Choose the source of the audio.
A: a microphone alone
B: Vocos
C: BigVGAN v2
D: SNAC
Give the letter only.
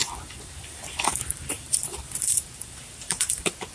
C